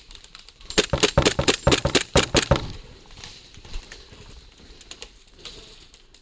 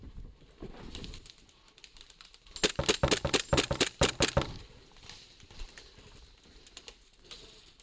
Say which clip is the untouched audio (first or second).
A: second